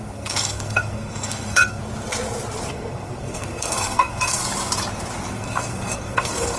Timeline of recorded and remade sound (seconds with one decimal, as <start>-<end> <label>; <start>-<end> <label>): 0.0-1.8 remade; 1.8-2.7 recorded; 2.7-4.4 remade; 4.4-5.3 recorded; 5.3-6.6 remade